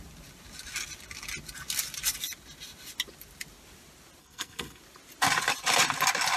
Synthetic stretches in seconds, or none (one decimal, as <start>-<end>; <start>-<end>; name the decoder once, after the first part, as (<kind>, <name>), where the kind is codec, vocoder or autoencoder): 4.2-4.8 (codec, SNAC)